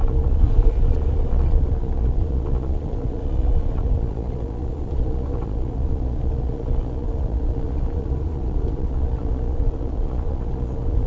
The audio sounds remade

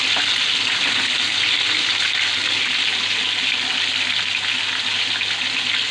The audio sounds recorded